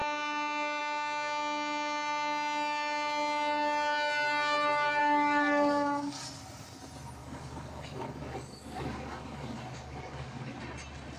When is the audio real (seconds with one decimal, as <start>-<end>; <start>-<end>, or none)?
0.0-5.0; 6.2-7.2; 10.6-11.2